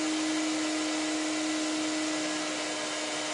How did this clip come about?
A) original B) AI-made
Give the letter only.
A